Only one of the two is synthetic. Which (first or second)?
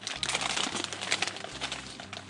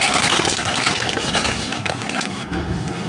second